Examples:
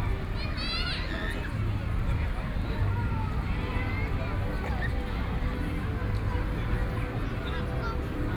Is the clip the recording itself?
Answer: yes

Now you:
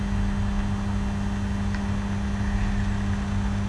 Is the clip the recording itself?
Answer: yes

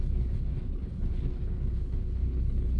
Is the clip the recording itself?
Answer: no